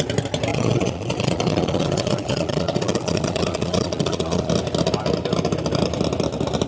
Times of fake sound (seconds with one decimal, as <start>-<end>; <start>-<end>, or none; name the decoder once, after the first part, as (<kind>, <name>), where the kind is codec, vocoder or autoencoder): 0.5-4.5 (vocoder, Vocos)